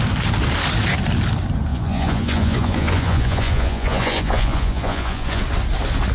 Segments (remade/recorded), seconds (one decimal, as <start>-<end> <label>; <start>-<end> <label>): 0.0-1.7 recorded; 1.7-5.4 remade; 5.4-6.1 recorded